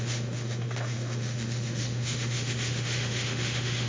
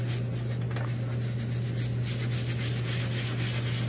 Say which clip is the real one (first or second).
second